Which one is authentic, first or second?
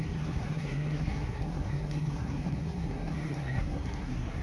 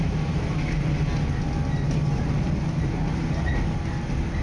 second